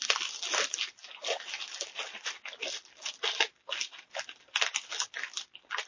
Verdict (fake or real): real